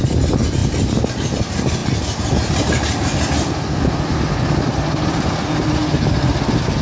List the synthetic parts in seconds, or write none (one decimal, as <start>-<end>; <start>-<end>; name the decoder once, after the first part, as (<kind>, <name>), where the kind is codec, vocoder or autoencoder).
none